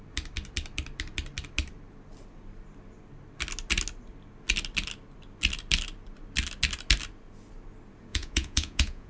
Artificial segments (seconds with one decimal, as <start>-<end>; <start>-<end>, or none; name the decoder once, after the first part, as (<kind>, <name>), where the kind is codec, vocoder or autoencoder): 8.1-9.1 (vocoder, Vocos)